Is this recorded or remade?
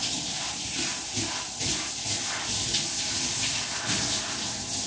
recorded